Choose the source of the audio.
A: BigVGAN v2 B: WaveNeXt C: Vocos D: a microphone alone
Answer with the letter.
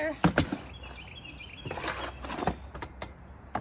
D